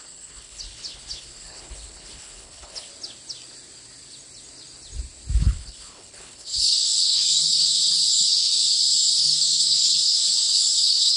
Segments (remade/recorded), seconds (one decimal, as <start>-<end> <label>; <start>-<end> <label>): 0.0-2.9 remade; 2.9-5.4 recorded; 5.4-7.9 remade; 7.9-9.2 recorded; 9.2-11.2 remade